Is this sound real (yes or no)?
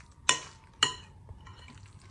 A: yes